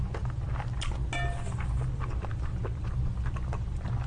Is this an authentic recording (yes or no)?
yes